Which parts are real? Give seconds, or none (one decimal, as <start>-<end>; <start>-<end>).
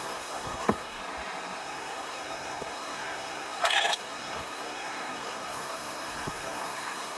1.0-1.6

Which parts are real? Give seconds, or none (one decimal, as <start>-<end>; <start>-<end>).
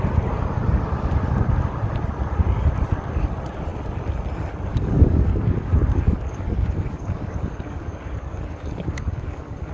0.0-4.7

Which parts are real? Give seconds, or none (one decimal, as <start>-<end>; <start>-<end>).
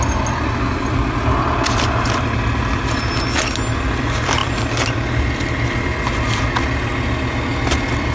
0.0-8.1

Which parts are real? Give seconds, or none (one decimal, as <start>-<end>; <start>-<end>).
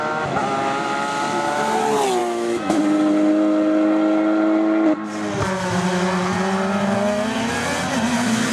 0.0-2.2; 2.8-8.5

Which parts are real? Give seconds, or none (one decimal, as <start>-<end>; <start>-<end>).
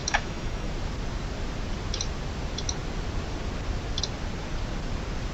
0.7-5.3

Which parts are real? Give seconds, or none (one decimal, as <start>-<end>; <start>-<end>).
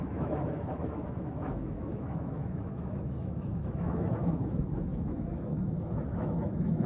none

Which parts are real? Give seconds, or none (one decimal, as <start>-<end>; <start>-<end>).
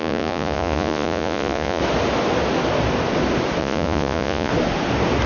1.8-3.6; 4.5-5.3